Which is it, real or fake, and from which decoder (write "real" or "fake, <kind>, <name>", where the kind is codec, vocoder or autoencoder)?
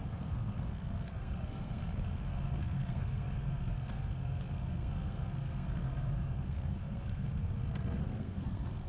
fake, codec, SNAC